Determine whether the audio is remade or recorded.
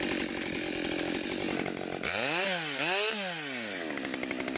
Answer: recorded